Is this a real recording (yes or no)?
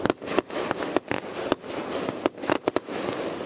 yes